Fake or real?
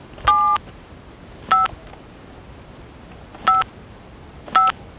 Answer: real